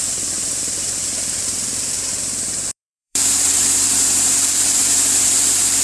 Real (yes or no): no